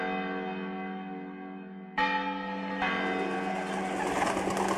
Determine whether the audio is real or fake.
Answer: real